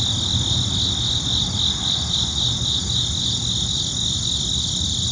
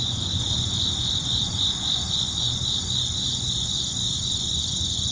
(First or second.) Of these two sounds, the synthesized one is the second